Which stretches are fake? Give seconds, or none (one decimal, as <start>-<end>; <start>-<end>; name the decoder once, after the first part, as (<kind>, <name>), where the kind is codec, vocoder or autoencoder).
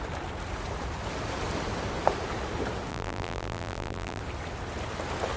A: 2.9-4.2 (vocoder, BigVGAN v2)